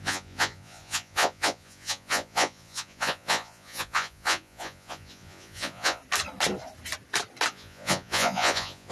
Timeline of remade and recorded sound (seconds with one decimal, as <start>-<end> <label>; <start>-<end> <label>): 0.0-6.0 remade; 6.0-7.5 recorded; 7.5-8.9 remade